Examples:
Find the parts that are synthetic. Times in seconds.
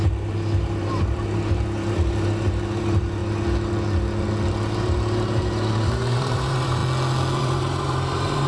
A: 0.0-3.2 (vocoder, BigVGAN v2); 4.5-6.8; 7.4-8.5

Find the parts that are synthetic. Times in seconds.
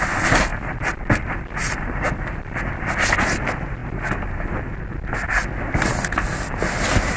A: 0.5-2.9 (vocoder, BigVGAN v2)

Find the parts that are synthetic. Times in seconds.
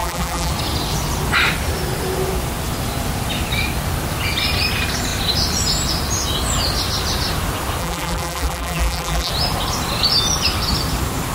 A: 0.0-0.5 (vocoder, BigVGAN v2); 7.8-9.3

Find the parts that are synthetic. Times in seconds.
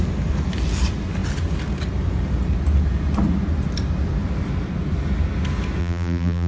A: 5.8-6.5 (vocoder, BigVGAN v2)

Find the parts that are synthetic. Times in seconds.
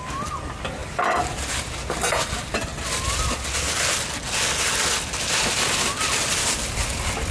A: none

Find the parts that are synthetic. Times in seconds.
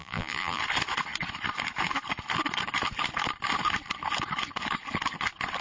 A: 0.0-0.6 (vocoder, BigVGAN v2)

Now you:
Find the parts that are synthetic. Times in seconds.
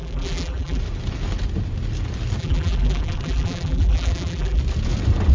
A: 0.0-0.8 (vocoder, BigVGAN v2); 2.4-4.6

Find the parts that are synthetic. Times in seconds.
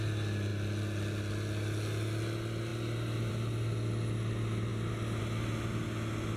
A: none